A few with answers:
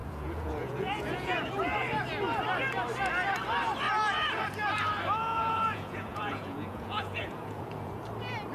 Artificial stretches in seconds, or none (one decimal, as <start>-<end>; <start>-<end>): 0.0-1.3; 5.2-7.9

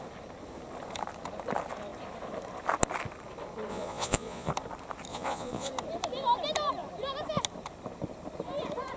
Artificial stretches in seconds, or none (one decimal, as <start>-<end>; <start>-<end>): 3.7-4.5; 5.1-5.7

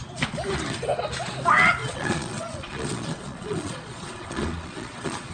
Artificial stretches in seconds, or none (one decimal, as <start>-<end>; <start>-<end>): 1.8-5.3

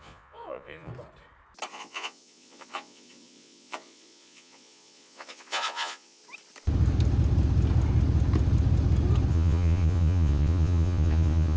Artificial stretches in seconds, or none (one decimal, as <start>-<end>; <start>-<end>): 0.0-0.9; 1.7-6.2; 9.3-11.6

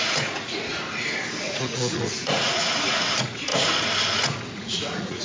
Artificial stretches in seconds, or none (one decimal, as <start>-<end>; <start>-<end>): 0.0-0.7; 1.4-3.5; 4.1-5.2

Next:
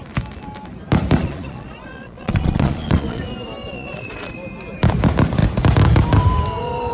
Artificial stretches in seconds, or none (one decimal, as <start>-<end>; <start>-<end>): 1.2-3.2; 3.7-4.3

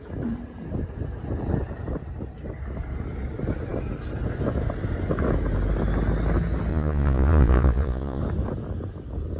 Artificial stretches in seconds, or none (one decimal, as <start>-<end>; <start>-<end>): 6.7-8.2

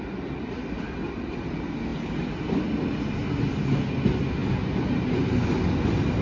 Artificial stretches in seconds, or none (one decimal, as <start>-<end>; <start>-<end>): none